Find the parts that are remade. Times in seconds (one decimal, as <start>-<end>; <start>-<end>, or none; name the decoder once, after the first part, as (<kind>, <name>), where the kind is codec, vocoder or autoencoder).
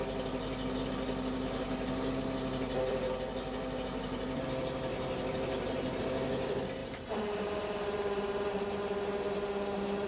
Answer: 4.9-6.0 (vocoder, BigVGAN v2); 6.8-8.5